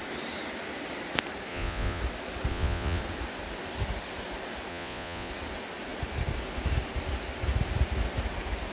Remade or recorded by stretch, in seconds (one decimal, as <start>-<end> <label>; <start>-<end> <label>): 0.0-1.5 recorded; 1.5-2.0 remade; 2.0-2.5 recorded; 2.5-3.0 remade; 3.0-4.7 recorded; 4.7-5.3 remade; 5.3-8.7 recorded